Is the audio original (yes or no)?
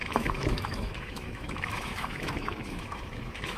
no